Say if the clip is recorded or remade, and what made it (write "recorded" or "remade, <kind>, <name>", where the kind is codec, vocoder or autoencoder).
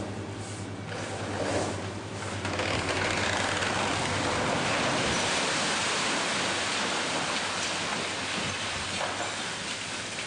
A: recorded